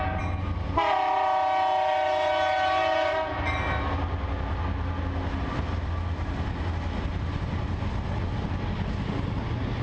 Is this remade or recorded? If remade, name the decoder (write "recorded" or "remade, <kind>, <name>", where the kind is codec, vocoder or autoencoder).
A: recorded